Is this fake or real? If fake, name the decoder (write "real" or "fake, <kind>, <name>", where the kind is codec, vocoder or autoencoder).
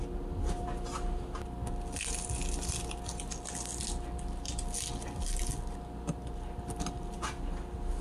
real